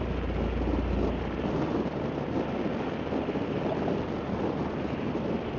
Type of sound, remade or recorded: recorded